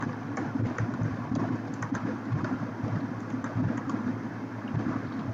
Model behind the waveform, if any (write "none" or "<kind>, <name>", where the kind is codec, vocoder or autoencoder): vocoder, BigVGAN v2